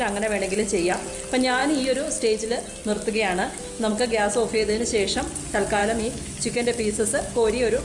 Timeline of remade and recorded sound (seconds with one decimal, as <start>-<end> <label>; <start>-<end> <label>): 0.0-3.4 recorded; 3.4-3.9 remade; 3.9-5.8 recorded; 5.8-7.8 remade